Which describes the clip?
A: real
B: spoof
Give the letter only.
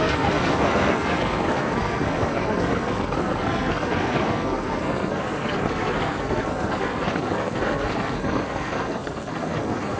B